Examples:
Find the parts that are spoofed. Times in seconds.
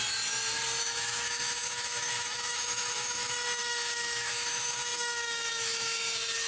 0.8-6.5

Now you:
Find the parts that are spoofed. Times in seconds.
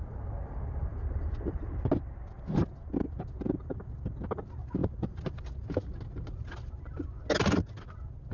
none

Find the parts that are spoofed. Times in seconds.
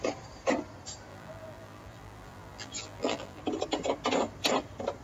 1.1-3.4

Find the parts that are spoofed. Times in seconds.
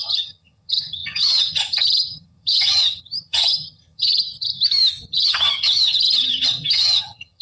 0.0-4.5; 5.1-7.4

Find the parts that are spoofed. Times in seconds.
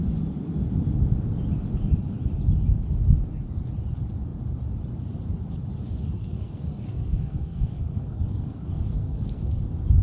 6.2-9.6